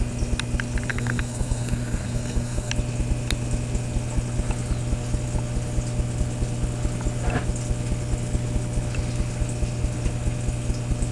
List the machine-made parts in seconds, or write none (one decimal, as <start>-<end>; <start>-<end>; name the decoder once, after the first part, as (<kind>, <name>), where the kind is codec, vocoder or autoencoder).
0.9-2.7 (codec, SNAC)